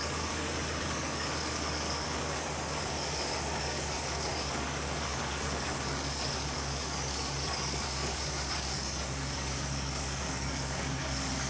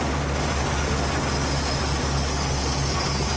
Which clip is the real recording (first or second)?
second